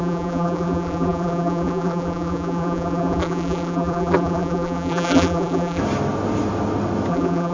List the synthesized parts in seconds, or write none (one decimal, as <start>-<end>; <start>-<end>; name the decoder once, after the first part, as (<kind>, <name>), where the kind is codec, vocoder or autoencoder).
0.0-5.8 (vocoder, BigVGAN v2); 7.1-7.5